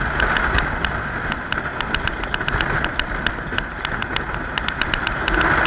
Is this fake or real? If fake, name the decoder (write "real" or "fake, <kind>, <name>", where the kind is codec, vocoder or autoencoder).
real